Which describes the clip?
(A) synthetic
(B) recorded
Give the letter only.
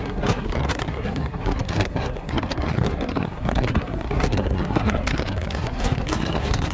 A